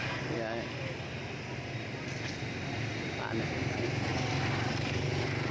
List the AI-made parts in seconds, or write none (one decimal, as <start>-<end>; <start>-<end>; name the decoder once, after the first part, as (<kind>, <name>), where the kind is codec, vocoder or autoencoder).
none